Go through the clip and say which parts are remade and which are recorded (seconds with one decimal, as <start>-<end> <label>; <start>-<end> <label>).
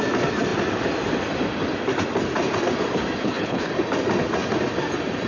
0.0-3.2 recorded; 3.2-3.7 remade; 3.7-5.3 recorded